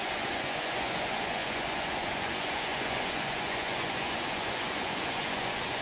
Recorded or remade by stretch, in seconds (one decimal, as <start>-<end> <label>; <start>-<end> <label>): 0.0-5.8 remade